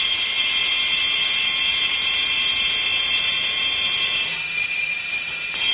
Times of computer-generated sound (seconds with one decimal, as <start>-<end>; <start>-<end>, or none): 0.0-5.7